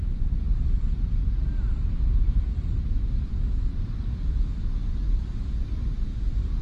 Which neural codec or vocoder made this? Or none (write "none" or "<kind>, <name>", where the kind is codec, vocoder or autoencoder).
vocoder, BigVGAN v2